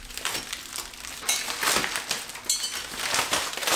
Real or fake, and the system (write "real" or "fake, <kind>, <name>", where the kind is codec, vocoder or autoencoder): real